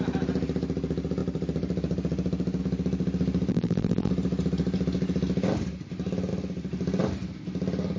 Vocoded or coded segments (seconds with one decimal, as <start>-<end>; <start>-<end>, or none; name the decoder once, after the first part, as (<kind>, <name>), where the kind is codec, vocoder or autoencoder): 3.5-4.1 (vocoder, BigVGAN v2)